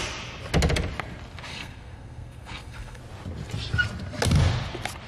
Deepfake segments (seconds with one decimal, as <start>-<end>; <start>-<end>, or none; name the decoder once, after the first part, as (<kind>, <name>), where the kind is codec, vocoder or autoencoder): 1.5-3.0 (codec, SNAC)